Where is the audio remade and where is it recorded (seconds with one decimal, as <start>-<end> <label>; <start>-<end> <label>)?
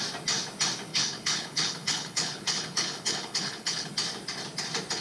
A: 0.0-0.9 recorded; 0.9-3.9 remade; 3.9-5.0 recorded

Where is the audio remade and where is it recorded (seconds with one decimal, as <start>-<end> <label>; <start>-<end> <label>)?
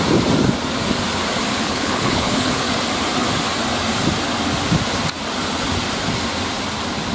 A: 0.0-1.5 recorded; 1.5-2.6 remade; 2.6-7.1 recorded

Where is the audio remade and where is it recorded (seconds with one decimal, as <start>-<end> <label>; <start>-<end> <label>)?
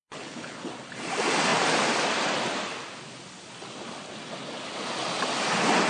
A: 0.0-0.7 remade; 0.7-5.9 recorded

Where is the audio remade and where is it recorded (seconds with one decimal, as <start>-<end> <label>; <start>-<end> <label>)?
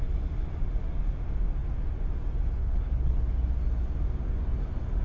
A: 0.0-2.6 recorded; 2.6-3.3 remade; 3.3-5.0 recorded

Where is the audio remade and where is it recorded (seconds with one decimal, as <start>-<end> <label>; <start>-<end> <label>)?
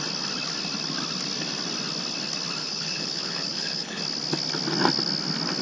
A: 0.0-2.6 recorded; 2.6-4.0 remade; 4.0-5.6 recorded